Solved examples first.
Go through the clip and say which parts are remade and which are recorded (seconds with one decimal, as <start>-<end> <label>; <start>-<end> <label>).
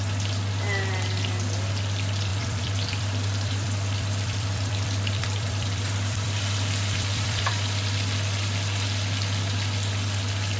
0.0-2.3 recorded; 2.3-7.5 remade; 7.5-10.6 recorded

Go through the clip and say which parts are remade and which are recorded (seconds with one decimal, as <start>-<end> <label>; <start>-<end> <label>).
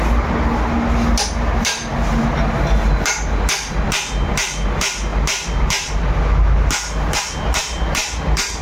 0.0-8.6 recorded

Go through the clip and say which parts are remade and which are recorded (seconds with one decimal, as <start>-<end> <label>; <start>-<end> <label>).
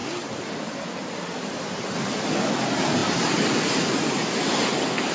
0.0-5.1 recorded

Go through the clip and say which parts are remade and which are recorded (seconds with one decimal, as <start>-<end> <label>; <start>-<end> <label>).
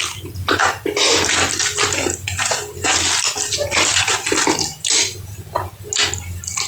0.0-6.7 recorded